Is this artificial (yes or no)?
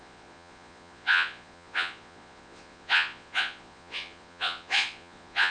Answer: yes